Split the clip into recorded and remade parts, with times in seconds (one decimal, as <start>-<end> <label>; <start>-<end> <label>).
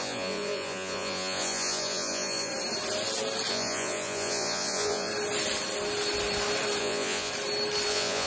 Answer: 0.0-2.5 remade; 2.5-3.5 recorded; 3.5-5.1 remade; 5.1-6.8 recorded; 6.8-7.3 remade; 7.3-7.9 recorded; 7.9-8.3 remade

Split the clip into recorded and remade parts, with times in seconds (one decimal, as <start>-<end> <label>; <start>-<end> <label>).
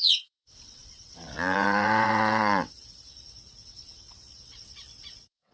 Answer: 0.0-5.5 remade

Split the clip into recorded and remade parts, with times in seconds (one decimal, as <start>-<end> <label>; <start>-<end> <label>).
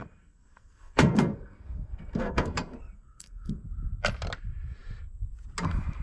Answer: 0.0-3.6 remade; 3.6-6.0 recorded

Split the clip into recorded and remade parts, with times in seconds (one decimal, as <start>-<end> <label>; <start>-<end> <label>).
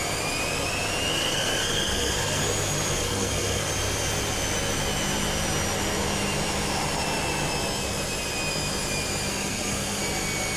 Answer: 0.0-1.1 recorded; 1.1-2.4 remade; 2.4-3.0 recorded; 3.0-3.7 remade; 3.7-9.3 recorded; 9.3-10.0 remade; 10.0-10.6 recorded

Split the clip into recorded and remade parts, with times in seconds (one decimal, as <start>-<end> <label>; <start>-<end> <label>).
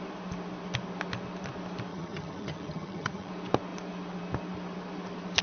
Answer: 0.0-1.9 recorded; 1.9-3.3 remade; 3.3-5.4 recorded